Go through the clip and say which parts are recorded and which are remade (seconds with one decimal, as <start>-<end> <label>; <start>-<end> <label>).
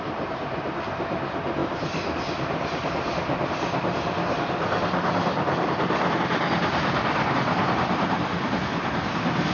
0.0-9.5 recorded